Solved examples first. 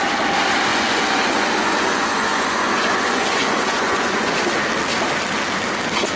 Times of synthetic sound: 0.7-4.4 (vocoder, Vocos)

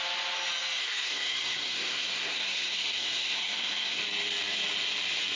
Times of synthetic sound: 0.8-4.0 (codec, SNAC)

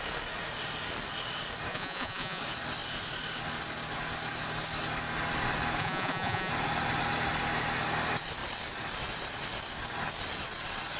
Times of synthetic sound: 1.7-2.4 (vocoder, Vocos); 5.8-6.5

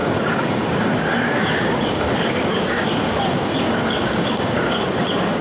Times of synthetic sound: 0.0-5.4 (codec, DAC)

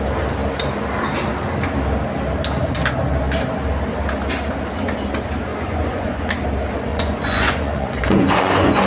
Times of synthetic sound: 5.5-6.3 (vocoder, Vocos); 6.9-8.9